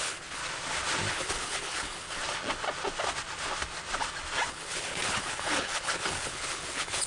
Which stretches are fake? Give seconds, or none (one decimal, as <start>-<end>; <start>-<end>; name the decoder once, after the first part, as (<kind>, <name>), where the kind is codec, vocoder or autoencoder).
0.0-0.4 (codec, HILCodec); 1.1-2.2; 4.5-7.1